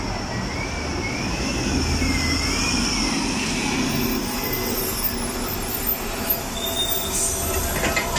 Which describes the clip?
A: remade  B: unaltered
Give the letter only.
B